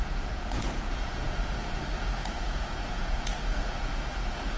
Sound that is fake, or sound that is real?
fake